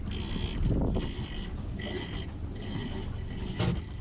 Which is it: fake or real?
real